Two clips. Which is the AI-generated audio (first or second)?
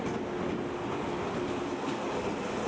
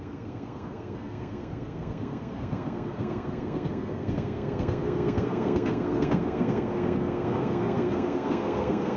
second